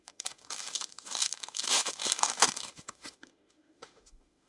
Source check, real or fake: fake